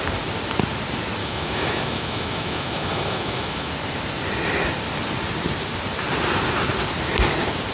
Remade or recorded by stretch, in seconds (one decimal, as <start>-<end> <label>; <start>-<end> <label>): 0.0-1.2 recorded; 1.2-3.7 remade; 3.7-7.7 recorded